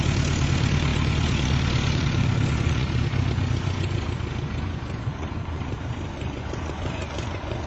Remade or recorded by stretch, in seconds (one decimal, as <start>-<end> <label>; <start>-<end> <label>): 0.0-7.7 remade